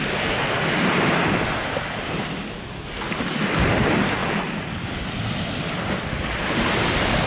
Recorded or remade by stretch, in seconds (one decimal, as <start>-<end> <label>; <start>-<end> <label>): 0.0-7.3 recorded